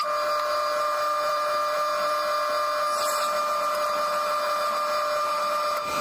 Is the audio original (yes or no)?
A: yes